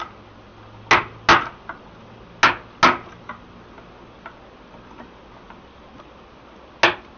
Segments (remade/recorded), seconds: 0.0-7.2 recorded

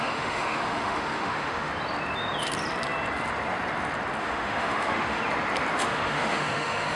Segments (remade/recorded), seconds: 0.0-1.7 remade; 1.7-4.2 recorded; 4.2-5.2 remade; 5.2-5.8 recorded; 5.8-7.0 remade